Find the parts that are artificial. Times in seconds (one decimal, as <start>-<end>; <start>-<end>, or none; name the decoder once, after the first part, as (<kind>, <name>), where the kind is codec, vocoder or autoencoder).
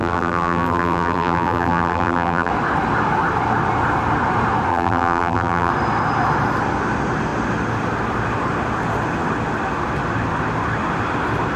0.0-2.5 (vocoder, BigVGAN v2); 4.7-5.7